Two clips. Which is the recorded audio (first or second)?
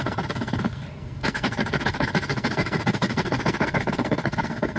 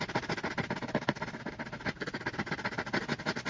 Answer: second